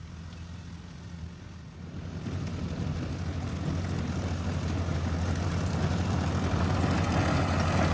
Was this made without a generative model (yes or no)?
yes